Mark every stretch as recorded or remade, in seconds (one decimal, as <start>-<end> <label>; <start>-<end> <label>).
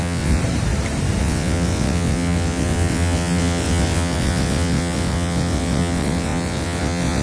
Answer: 0.0-0.4 remade; 0.4-1.2 recorded; 1.2-7.2 remade